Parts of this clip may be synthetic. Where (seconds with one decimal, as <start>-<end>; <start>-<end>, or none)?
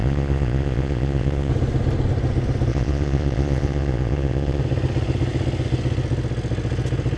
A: 0.0-1.5; 2.7-4.6